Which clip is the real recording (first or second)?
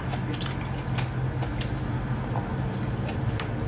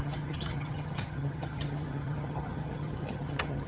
first